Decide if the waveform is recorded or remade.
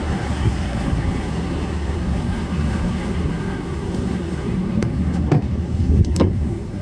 remade